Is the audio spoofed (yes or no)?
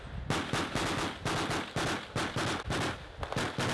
no